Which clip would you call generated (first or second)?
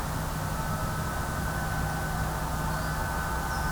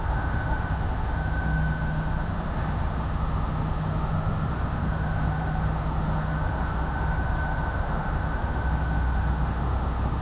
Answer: second